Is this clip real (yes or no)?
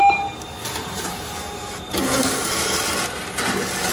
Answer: yes